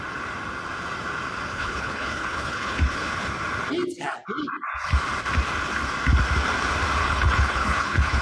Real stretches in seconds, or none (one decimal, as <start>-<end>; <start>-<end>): 0.0-1.5; 3.3-7.0